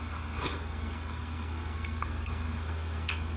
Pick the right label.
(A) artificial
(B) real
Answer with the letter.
A